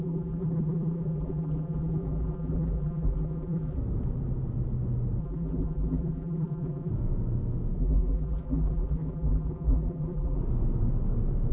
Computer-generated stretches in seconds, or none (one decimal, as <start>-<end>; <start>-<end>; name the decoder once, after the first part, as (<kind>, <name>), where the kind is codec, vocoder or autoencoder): 0.0-3.8 (vocoder, BigVGAN v2); 5.2-6.9; 7.8-10.4